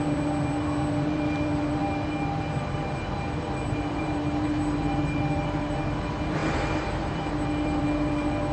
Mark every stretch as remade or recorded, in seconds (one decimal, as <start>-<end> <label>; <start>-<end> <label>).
0.0-8.5 remade